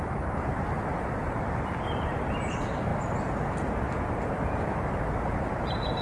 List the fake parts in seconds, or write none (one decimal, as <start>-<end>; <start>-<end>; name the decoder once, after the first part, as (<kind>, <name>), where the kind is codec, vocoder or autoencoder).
0.0-2.9 (vocoder, BigVGAN v2); 5.1-6.0